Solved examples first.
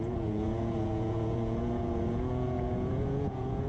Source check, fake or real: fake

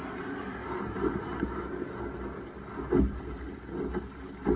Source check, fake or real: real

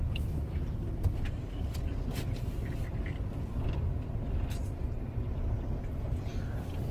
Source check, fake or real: real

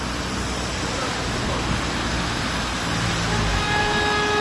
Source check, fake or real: real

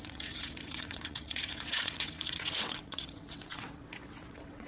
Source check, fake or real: fake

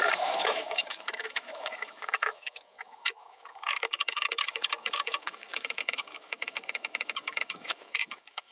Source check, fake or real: fake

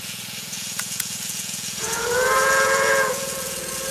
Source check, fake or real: fake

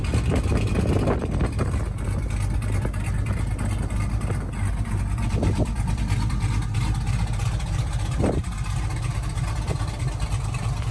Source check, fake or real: real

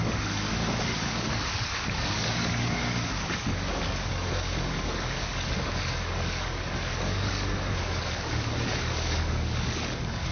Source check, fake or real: fake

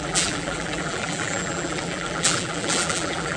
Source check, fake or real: fake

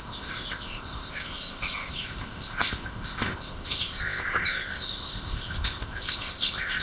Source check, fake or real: fake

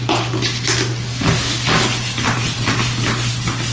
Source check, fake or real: real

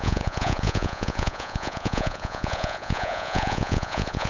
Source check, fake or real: fake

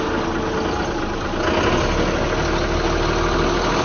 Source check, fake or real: real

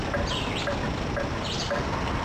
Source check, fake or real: real